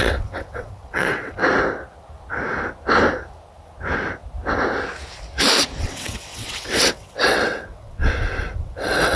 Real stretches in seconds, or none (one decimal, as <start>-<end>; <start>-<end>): 1.4-5.8